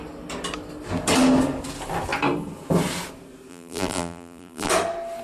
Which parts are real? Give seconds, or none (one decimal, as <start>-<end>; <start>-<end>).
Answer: 0.0-3.5; 4.7-5.2